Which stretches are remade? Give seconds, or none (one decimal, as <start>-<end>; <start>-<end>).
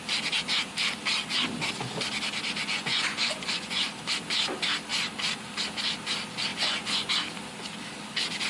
2.6-3.9; 6.5-7.1